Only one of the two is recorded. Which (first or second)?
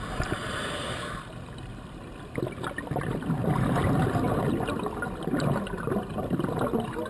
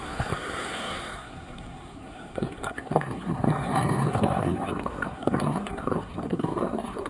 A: first